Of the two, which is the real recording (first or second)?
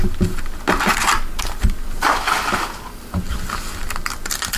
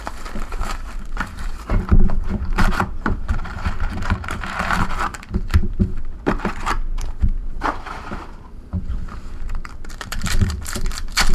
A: first